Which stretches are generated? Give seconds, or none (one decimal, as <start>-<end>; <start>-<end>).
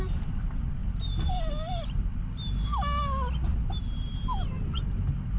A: none